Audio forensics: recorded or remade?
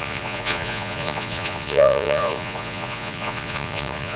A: remade